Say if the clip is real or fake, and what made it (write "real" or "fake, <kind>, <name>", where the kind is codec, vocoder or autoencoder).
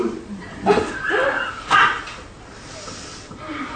fake, vocoder, BigVGAN v2